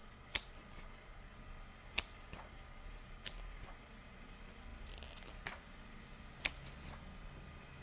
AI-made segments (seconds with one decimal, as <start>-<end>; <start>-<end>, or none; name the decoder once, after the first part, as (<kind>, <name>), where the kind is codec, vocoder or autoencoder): none